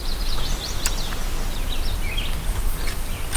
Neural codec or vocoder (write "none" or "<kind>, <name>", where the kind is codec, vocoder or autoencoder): none